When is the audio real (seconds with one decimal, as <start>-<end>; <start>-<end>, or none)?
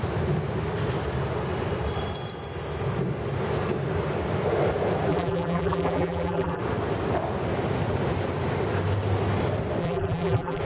0.0-5.1; 6.6-9.8